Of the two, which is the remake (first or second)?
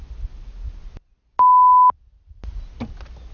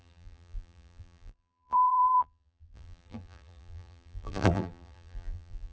second